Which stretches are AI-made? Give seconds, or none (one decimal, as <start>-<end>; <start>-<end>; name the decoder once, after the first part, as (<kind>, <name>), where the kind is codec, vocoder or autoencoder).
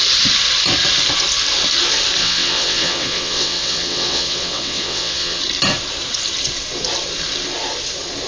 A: 2.2-5.4 (vocoder, WaveNeXt)